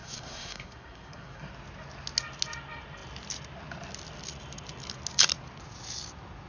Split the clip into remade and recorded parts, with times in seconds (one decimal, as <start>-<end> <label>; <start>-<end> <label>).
0.0-1.5 remade; 1.5-6.5 recorded